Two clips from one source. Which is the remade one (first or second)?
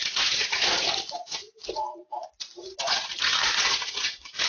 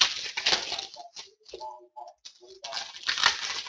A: first